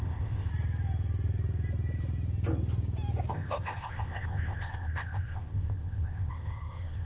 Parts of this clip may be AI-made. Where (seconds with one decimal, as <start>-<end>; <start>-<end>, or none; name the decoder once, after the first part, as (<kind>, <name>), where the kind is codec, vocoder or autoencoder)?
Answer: 0.0-0.5 (codec, ZipCodec); 3.3-7.1